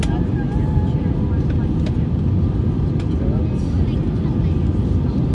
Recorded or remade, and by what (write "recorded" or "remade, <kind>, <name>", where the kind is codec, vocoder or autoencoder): recorded